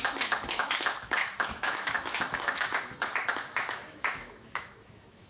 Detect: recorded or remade remade